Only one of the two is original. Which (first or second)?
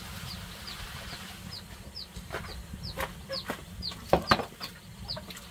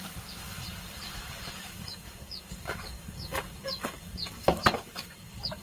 first